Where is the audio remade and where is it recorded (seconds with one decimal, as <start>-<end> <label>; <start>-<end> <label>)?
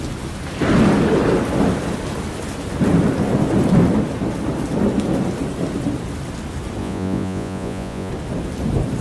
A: 0.0-6.8 recorded; 6.8-8.1 remade; 8.1-9.0 recorded